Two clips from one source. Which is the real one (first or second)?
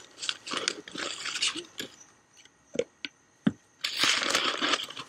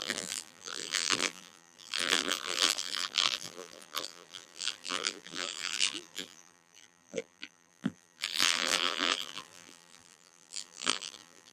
first